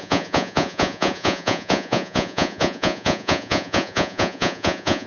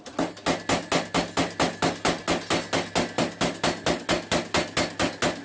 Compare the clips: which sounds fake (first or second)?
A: first